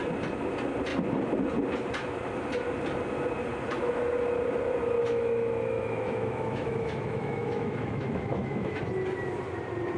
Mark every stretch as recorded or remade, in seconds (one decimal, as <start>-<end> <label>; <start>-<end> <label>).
0.0-5.0 recorded; 5.0-8.8 remade; 8.8-10.0 recorded